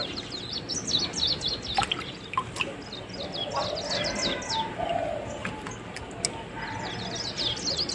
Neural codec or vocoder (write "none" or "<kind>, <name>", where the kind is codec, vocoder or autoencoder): none